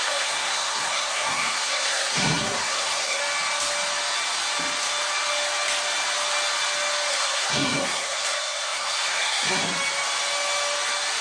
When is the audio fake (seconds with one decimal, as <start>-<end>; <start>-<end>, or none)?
0.0-3.2; 7.1-9.6